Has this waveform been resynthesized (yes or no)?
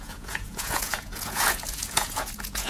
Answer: yes